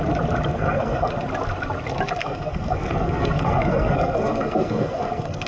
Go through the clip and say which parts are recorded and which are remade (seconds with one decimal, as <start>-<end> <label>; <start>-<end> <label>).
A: 0.0-0.5 recorded; 0.5-1.1 remade; 1.1-2.2 recorded; 2.2-5.5 remade